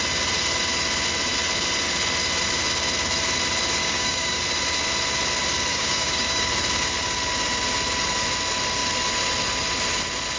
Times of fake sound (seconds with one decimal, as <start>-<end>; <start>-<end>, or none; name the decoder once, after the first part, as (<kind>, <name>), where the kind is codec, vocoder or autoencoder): 3.8-4.4 (codec, DAC); 5.7-6.5